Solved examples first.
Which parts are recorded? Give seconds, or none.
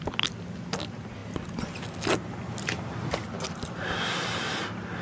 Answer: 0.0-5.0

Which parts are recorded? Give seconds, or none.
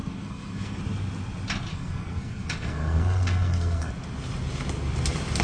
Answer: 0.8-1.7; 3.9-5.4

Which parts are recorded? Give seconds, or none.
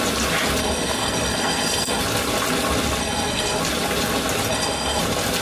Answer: 0.0-0.6; 2.0-3.0; 3.6-4.5; 5.0-5.4